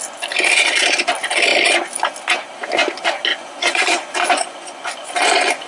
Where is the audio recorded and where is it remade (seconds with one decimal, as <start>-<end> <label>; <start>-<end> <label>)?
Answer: 0.0-3.3 recorded; 3.3-5.7 remade

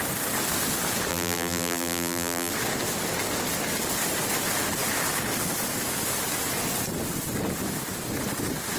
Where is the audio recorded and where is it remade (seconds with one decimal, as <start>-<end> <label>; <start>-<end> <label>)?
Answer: 0.0-1.1 recorded; 1.1-2.5 remade; 2.5-8.8 recorded

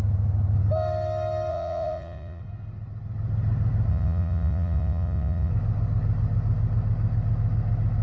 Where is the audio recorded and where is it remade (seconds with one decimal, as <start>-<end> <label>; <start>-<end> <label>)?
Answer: 0.0-1.5 recorded; 1.5-2.4 remade; 2.4-3.9 recorded; 3.9-5.5 remade; 5.5-8.0 recorded

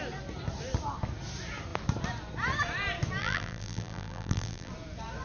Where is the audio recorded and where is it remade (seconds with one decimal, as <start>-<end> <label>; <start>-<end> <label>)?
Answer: 0.0-3.2 recorded; 3.2-4.7 remade; 4.7-5.2 recorded

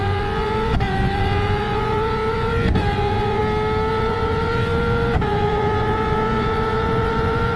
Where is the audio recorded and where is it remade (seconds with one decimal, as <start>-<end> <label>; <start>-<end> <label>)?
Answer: 0.0-3.4 remade; 3.4-3.9 recorded; 3.9-7.6 remade